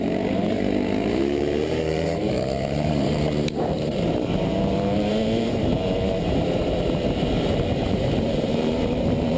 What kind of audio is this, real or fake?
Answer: fake